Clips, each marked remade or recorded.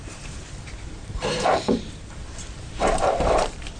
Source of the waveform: remade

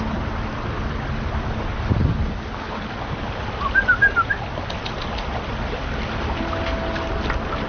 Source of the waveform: recorded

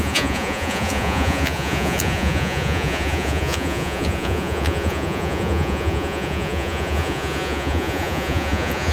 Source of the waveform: remade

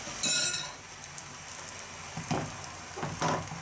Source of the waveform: recorded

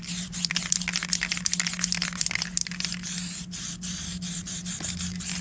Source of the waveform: recorded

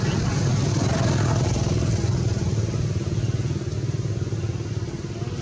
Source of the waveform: recorded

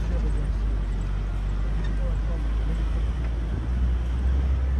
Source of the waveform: recorded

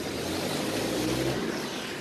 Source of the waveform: recorded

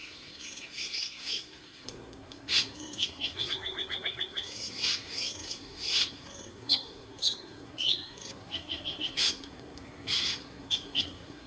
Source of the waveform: remade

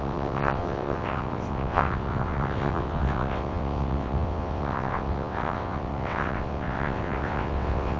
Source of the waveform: remade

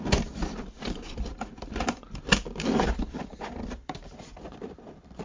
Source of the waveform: remade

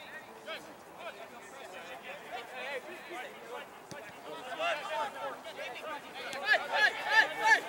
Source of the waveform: recorded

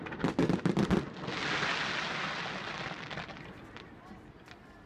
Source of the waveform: recorded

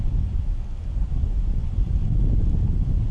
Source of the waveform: recorded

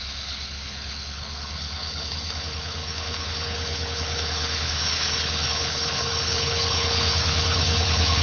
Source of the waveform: remade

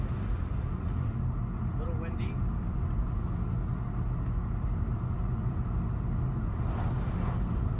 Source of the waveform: recorded